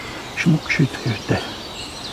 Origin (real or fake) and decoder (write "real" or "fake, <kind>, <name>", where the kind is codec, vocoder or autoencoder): real